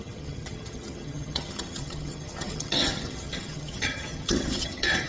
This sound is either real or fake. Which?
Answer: fake